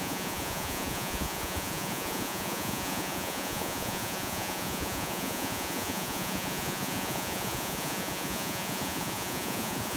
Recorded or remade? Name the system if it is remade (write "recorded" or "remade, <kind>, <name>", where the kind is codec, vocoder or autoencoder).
remade, vocoder, Vocos